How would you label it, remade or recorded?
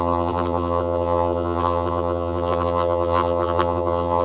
remade